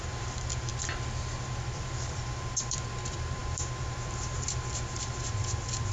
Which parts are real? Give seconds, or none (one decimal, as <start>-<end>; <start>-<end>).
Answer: 0.7-1.4